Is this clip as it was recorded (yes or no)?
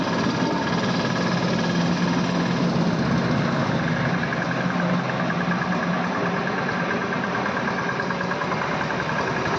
yes